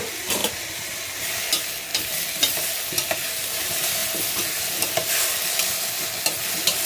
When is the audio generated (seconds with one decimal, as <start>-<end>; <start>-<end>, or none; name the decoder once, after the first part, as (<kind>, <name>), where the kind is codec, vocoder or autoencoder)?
0.4-1.0 (vocoder, BigVGAN v2)

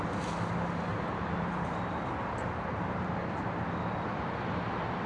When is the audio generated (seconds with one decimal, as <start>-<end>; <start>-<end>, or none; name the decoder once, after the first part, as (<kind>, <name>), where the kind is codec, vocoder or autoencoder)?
0.9-4.0 (vocoder, BigVGAN v2)